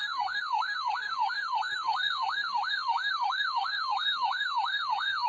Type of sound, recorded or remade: remade